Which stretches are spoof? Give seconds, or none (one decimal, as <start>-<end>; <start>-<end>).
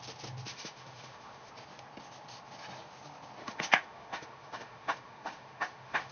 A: 0.5-1.5; 3.4-6.1